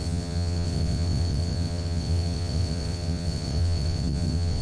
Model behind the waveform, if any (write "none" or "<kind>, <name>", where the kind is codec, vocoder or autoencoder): vocoder, WaveNeXt